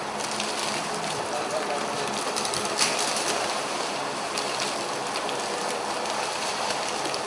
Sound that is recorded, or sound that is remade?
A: remade